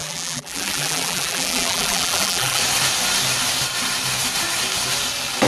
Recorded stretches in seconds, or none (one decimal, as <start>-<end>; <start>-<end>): 2.6-5.5